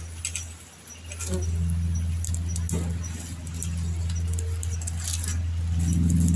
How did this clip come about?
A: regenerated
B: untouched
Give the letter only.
B